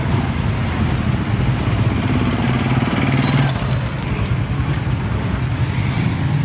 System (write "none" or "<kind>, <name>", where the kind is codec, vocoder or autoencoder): none